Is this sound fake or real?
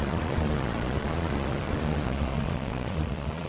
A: fake